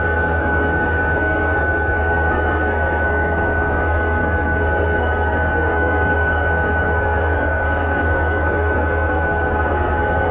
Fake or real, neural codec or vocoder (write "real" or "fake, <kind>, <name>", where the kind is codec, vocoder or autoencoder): fake, codec, SNAC